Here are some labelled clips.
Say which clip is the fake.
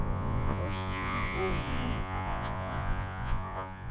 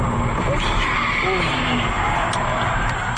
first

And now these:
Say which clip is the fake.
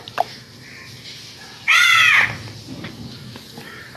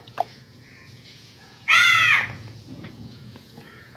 second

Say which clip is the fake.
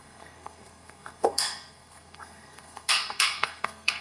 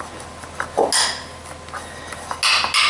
first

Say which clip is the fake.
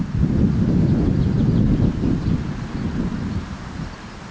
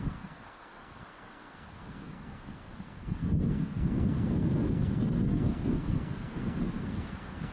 second